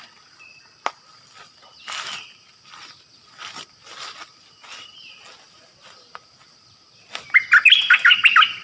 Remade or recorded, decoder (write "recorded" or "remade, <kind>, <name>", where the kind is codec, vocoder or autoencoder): recorded